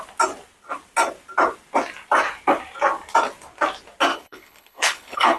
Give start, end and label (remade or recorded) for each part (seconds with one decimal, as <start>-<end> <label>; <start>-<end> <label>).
0.0-4.1 recorded; 4.1-5.4 remade